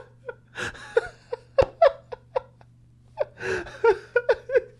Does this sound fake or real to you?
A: real